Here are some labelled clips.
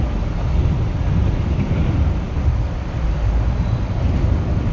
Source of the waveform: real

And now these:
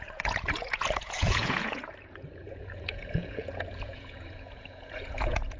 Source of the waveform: fake